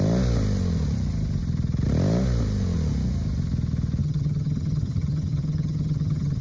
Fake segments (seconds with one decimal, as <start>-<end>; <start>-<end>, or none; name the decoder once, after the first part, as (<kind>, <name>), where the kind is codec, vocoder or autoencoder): 4.0-6.4 (vocoder, HiFi-GAN)